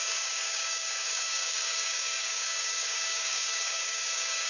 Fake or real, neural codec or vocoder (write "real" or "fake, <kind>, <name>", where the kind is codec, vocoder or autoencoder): fake, codec, DAC